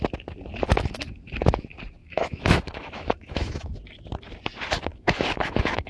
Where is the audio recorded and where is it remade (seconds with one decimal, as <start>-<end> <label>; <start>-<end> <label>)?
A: 0.0-2.0 recorded; 2.0-3.7 remade; 3.7-4.9 recorded; 4.9-5.9 remade